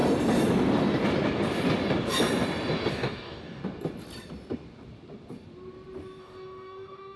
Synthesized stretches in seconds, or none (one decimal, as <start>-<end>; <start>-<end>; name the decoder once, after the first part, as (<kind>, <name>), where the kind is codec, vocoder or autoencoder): 2.9-3.6 (codec, DAC); 6.2-7.2